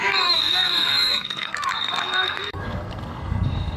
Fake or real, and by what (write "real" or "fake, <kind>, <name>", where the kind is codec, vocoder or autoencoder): fake, codec, SNAC